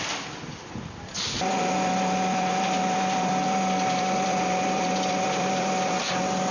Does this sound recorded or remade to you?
remade